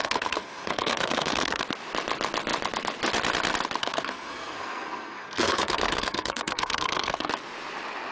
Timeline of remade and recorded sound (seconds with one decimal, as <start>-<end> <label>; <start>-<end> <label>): 0.0-1.6 remade; 1.6-3.8 recorded; 3.8-7.3 remade; 7.3-8.1 recorded